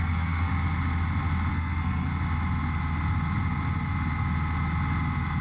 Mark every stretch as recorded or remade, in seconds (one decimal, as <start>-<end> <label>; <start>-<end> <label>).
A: 0.0-0.5 remade; 0.5-1.5 recorded; 1.5-2.1 remade; 2.1-5.4 recorded